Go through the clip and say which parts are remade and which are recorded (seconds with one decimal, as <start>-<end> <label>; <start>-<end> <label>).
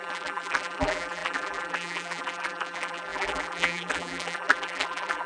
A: 0.0-5.3 remade